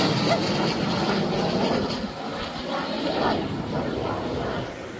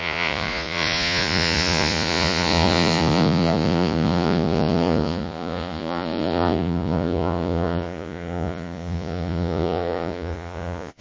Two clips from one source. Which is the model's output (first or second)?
second